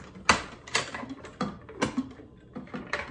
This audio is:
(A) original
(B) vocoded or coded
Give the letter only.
A